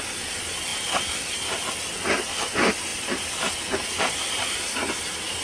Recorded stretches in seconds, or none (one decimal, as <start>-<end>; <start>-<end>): 0.0-5.4